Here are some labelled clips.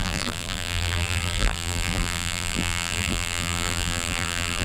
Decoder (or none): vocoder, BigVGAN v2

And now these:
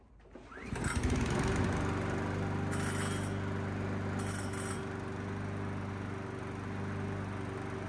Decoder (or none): none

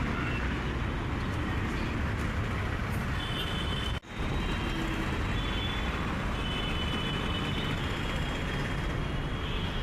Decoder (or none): none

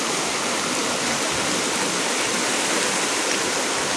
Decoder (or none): none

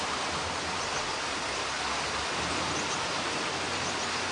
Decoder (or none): none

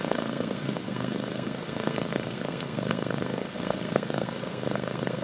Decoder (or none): codec, SNAC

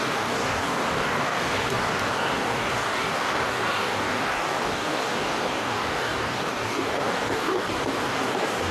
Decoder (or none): codec, DAC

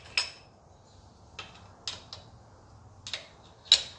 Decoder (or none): none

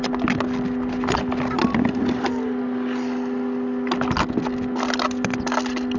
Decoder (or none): none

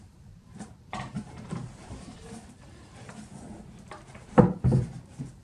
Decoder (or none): vocoder, BigVGAN v2